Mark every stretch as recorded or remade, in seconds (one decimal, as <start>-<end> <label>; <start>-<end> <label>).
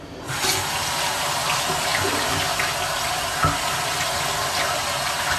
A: 0.0-5.4 recorded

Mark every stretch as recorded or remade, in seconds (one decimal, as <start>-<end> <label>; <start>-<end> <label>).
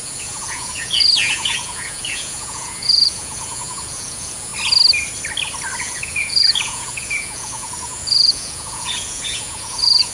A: 0.0-4.5 remade; 4.5-5.8 recorded; 5.8-10.1 remade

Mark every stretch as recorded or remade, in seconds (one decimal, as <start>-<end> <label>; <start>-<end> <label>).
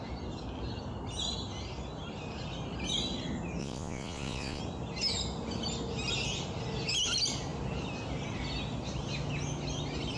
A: 0.0-3.6 recorded; 3.6-4.6 remade; 4.6-10.2 recorded